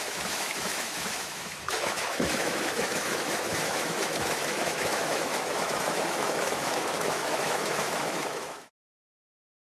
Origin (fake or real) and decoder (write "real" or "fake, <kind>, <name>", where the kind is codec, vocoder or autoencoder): fake, autoencoder, DAC-VAE